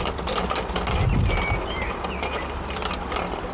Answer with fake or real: real